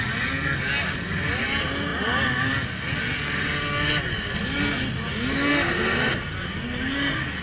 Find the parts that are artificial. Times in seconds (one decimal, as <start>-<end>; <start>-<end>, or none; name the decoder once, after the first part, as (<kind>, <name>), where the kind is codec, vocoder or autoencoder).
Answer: none